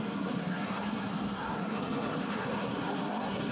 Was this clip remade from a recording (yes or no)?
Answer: yes